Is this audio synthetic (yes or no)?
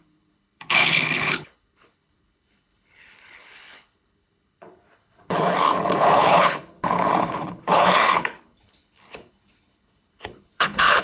yes